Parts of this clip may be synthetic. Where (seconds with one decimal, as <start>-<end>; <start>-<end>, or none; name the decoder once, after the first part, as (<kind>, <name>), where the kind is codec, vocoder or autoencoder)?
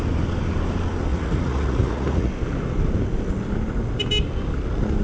1.1-2.3 (vocoder, Vocos)